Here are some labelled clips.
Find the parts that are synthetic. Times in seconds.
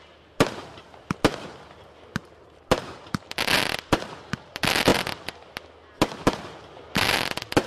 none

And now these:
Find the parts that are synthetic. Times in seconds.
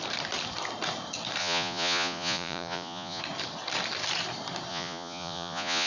1.4-3.2 (vocoder, Vocos); 4.7-5.9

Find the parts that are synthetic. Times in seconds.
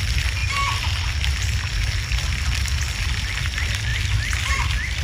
none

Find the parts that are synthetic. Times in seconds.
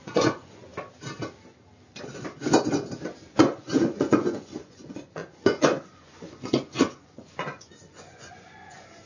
0.0-0.7 (vocoder, Vocos); 3.3-9.1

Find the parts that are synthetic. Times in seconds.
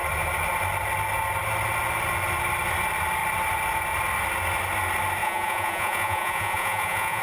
5.2-7.2 (vocoder, Vocos)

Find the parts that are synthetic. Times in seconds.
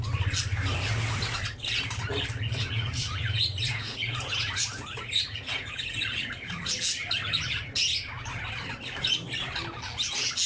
2.6-6.7 (vocoder, Vocos)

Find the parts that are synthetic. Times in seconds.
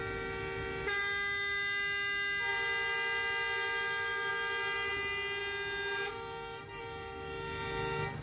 none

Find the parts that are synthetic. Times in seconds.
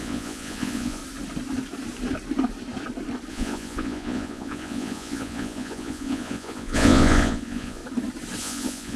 0.0-1.0 (vocoder, Vocos); 3.3-7.8; 8.4-9.0